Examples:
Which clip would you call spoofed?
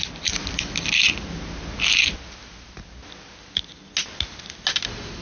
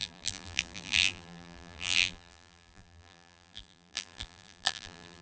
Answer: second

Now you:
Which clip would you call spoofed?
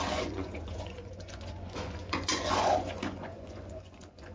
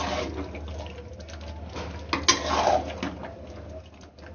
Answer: first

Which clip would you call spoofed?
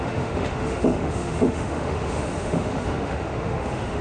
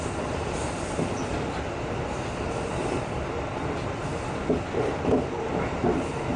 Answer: first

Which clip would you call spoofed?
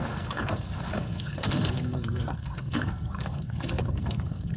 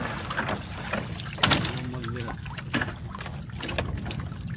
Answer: first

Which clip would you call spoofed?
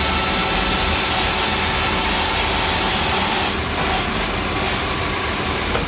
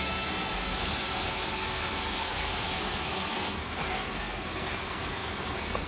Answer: second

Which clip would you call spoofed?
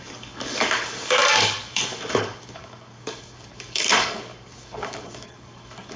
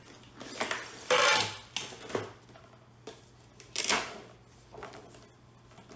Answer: first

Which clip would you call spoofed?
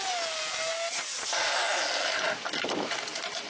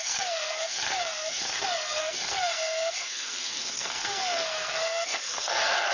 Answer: second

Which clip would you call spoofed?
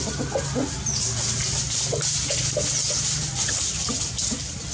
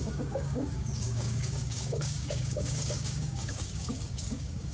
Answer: second